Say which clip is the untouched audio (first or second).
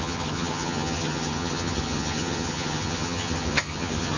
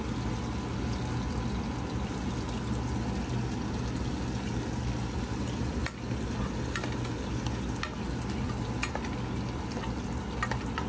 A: second